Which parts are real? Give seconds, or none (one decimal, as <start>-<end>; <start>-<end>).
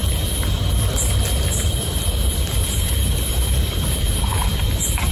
0.0-1.6